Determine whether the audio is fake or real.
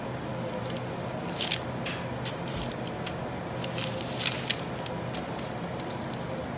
real